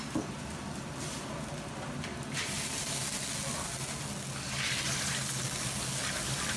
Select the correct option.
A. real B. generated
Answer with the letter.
A